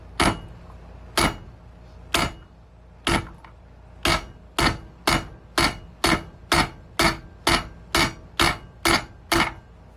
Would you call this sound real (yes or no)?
yes